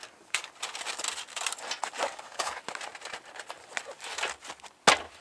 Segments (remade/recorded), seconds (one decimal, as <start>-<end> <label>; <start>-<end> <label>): 0.0-0.5 remade; 0.5-2.1 recorded; 2.1-2.6 remade; 2.6-5.2 recorded